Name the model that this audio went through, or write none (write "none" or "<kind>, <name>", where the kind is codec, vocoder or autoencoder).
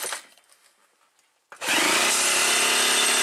none